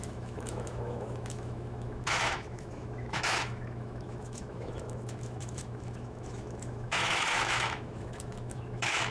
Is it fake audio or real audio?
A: fake